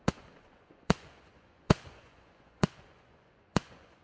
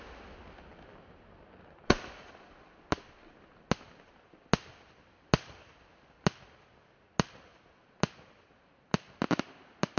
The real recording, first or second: second